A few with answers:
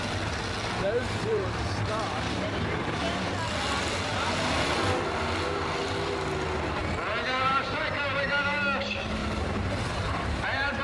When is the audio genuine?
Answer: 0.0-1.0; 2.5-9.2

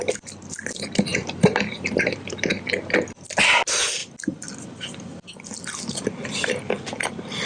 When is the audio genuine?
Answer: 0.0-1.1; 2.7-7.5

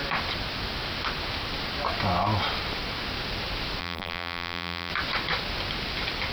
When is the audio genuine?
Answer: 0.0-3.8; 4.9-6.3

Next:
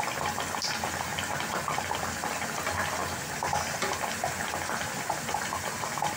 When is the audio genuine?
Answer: 0.0-6.2

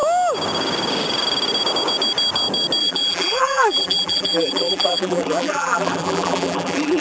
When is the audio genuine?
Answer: 0.0-2.8

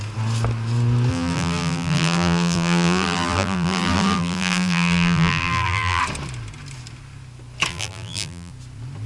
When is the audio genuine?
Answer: 0.0-1.1; 6.0-7.7; 8.5-9.1